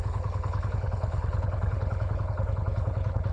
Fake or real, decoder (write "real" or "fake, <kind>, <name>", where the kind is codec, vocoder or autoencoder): fake, codec, HILCodec